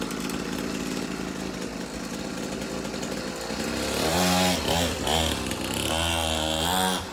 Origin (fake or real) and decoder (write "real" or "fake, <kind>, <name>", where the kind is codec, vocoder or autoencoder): real